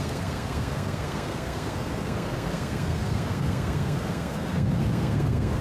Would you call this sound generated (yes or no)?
yes